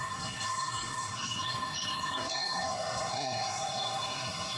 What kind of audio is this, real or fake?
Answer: fake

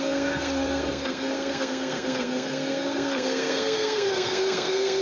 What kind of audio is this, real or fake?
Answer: fake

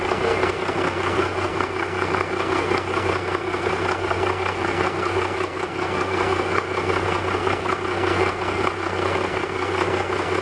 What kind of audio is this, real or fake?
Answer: fake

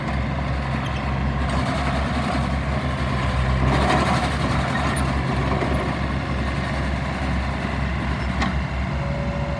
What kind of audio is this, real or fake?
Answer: real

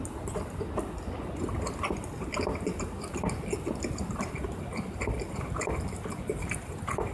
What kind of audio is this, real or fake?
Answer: real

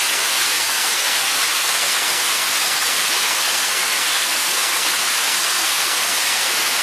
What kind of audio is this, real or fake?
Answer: fake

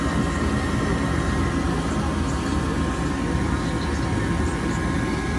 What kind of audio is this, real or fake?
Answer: real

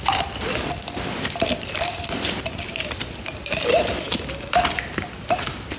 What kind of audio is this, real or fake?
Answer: real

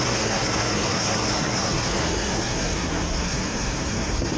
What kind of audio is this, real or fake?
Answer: fake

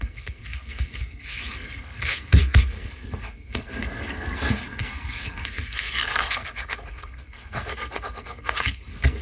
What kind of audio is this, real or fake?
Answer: fake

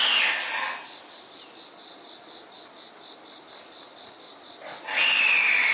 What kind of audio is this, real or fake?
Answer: real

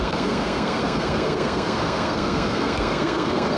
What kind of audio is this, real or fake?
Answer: fake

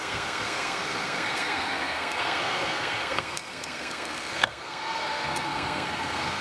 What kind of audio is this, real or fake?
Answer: fake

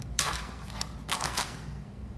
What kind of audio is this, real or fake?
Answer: fake